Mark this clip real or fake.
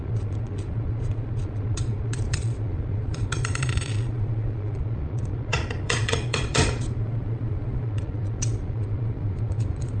fake